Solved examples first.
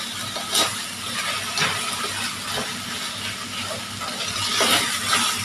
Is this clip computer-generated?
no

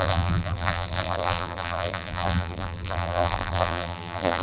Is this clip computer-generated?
yes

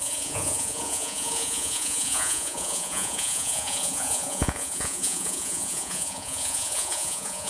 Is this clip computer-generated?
yes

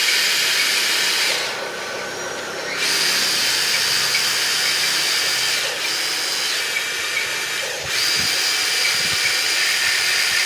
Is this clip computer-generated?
no